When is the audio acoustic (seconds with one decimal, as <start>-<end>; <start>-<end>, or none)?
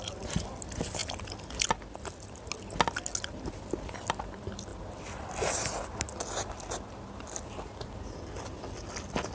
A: 0.0-9.3